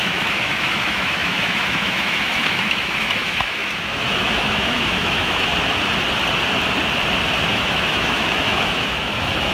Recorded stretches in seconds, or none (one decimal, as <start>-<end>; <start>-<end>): 5.5-7.5